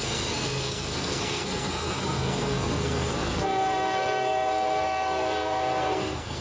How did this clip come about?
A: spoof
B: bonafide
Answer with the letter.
A